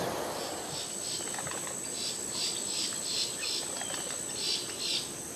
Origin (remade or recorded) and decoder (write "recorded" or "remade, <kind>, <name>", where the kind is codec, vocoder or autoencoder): recorded